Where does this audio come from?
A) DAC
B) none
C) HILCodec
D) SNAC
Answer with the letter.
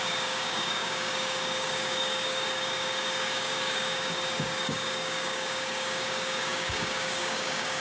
A